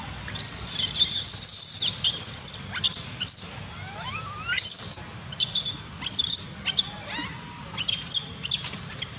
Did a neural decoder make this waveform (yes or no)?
no